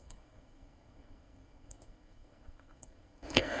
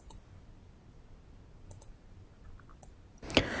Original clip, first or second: second